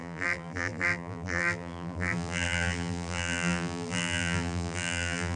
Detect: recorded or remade remade